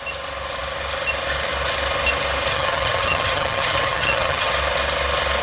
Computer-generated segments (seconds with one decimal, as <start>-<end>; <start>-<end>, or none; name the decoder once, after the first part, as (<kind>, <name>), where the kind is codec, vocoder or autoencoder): 2.5-4.5 (vocoder, HiFi-GAN)